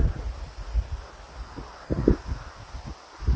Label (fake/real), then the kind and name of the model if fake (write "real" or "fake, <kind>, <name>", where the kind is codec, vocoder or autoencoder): real